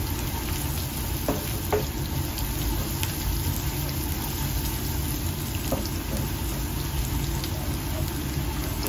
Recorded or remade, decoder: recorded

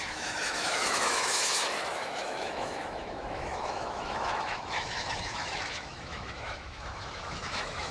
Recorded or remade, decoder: remade, autoencoder, DAC-VAE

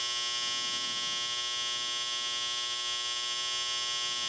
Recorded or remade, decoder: recorded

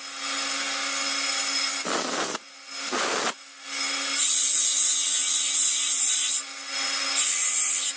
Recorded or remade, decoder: recorded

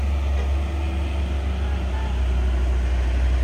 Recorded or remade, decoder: recorded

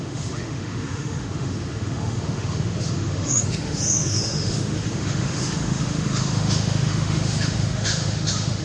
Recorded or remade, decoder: remade, autoencoder, DAC-VAE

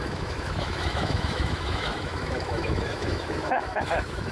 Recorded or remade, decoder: remade, autoencoder, DAC-VAE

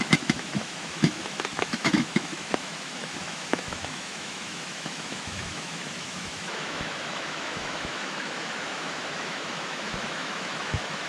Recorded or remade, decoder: remade, autoencoder, DAC-VAE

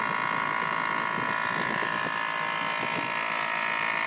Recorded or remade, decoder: recorded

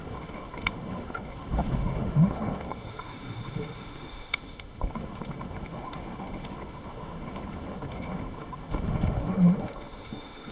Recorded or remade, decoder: remade, autoencoder, DAC-VAE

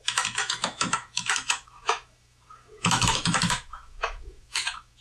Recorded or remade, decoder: remade, autoencoder, DAC-VAE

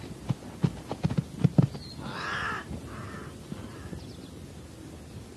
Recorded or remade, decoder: recorded